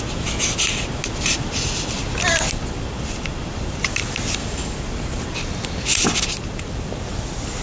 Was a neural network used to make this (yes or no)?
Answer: no